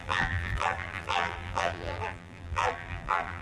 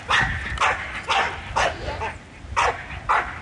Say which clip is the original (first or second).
second